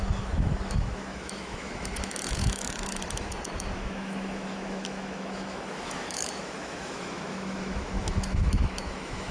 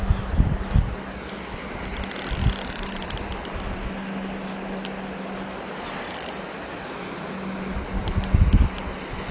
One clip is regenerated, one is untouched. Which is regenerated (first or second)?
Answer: first